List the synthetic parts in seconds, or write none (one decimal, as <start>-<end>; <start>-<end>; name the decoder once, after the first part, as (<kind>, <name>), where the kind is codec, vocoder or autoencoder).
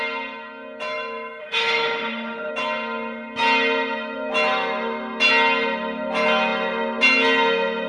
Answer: 1.4-2.5 (autoencoder, DAC-VAE)